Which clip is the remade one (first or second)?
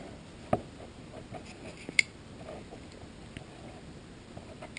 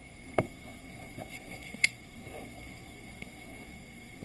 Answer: second